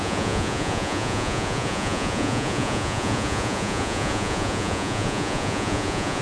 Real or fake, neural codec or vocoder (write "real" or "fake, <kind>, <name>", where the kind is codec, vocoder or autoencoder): fake, vocoder, Vocos